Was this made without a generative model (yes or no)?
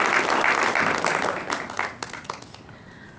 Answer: yes